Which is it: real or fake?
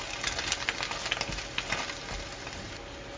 real